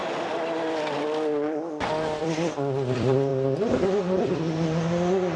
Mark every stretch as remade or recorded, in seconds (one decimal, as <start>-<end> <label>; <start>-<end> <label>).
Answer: 0.0-2.2 recorded; 2.2-5.4 remade